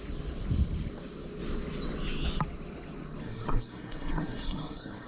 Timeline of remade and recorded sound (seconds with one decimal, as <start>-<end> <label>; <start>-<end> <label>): 0.0-3.2 recorded; 3.2-5.1 remade